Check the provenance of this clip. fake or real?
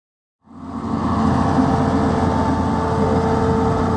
real